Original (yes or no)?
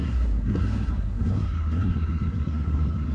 no